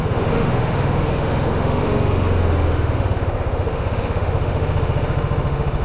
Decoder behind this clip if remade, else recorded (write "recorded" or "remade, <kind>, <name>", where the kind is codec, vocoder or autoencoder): remade, autoencoder, DAC-VAE